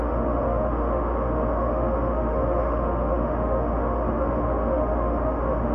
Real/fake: fake